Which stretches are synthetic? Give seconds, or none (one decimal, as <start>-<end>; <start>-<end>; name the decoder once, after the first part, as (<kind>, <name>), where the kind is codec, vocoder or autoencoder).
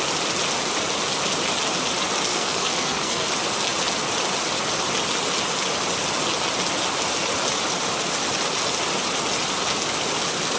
2.3-3.3 (codec, SNAC)